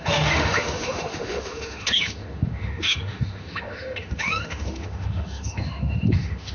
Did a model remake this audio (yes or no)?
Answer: yes